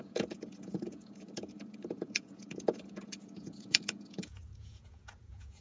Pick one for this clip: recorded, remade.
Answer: remade